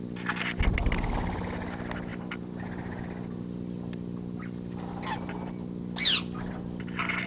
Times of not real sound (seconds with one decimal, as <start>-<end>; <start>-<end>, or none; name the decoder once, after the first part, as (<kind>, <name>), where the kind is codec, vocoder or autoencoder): none